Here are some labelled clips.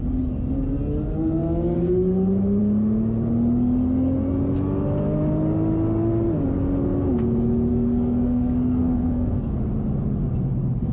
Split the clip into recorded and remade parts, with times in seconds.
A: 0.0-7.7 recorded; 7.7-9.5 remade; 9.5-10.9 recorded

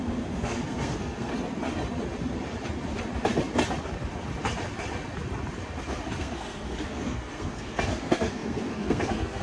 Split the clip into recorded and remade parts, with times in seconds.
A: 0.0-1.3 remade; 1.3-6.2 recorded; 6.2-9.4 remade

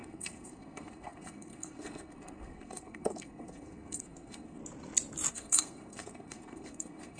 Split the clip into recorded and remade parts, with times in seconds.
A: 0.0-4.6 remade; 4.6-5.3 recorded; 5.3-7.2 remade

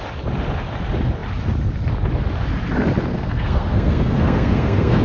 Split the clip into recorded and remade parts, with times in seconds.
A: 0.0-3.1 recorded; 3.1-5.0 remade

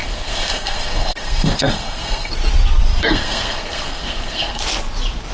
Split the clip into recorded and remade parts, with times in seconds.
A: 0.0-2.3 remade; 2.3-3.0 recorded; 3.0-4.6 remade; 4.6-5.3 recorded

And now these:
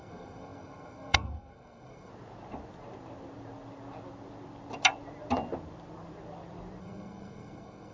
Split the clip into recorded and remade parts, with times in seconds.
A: 0.0-2.1 remade; 2.1-6.8 recorded; 6.8-7.9 remade

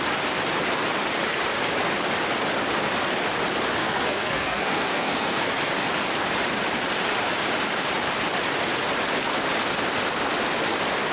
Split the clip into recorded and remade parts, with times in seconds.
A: 0.0-3.8 recorded; 3.8-5.5 remade; 5.5-11.1 recorded